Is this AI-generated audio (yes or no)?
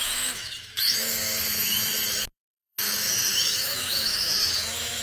yes